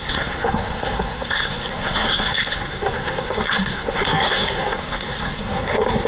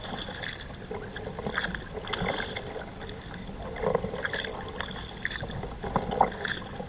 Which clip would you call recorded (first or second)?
second